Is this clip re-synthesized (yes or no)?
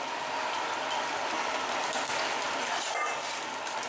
no